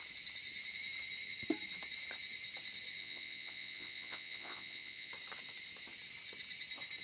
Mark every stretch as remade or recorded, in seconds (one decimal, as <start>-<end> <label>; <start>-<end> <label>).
0.0-3.0 recorded; 3.0-5.1 remade; 5.1-7.0 recorded